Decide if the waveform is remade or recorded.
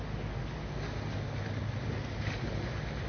recorded